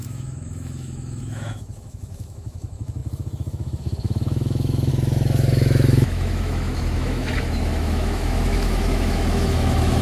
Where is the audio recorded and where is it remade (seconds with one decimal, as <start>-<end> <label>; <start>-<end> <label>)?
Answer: 0.0-10.0 remade